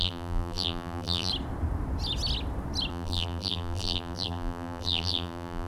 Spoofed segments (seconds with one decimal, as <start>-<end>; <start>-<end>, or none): 0.0-1.3; 2.9-5.7